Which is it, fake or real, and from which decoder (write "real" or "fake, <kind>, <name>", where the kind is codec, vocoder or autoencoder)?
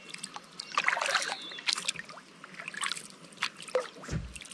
real